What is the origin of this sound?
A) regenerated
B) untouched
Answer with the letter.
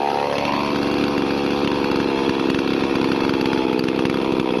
B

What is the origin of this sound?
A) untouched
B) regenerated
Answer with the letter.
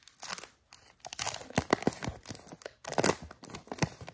A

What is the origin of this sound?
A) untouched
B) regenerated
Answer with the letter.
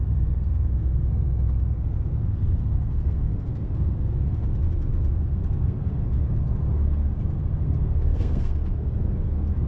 B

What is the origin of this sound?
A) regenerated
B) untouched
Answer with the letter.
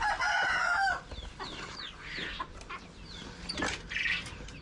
B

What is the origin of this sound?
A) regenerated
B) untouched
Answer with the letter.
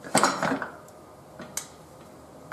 B